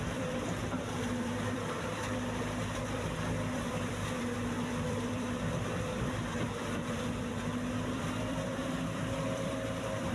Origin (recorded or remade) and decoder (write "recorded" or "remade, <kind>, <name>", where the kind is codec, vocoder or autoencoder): remade, vocoder, BigVGAN v2